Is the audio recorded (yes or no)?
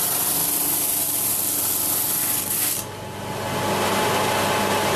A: yes